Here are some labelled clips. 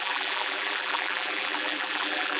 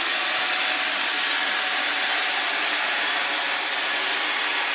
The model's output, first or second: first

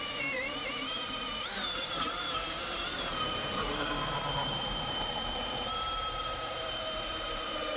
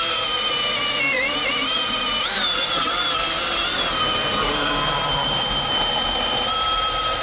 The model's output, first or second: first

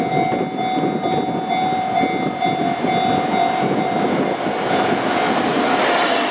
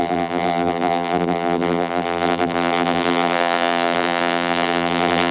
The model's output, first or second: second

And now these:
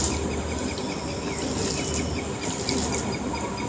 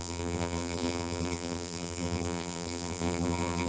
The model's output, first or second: second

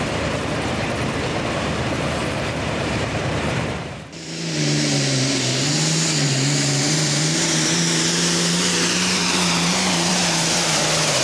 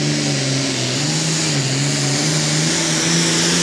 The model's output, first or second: first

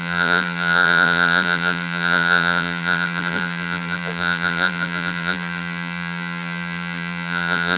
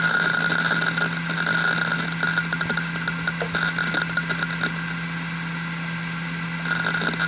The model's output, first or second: first